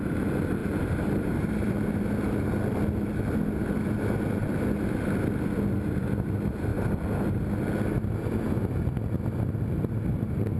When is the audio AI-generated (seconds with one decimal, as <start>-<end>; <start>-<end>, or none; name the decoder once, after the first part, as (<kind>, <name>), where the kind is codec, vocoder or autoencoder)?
0.6-1.7 (vocoder, BigVGAN v2)